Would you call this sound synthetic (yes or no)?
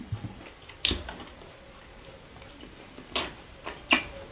no